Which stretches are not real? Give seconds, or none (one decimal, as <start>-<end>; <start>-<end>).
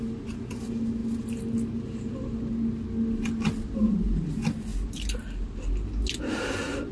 none